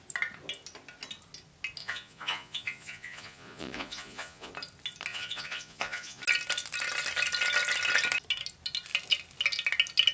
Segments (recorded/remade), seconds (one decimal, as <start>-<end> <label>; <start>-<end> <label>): 0.0-1.8 recorded; 1.8-4.5 remade; 4.5-5.1 recorded; 5.1-6.2 remade; 6.2-10.1 recorded